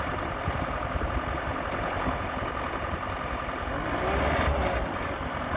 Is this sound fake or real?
real